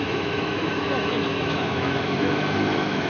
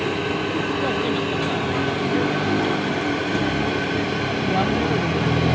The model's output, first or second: first